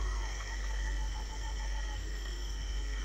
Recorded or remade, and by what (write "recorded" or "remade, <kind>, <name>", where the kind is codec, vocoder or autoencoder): remade, codec, SNAC